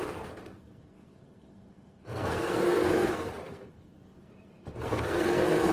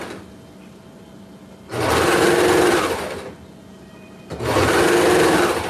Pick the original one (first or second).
second